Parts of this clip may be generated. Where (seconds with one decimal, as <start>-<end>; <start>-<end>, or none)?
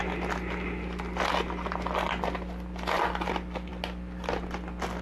none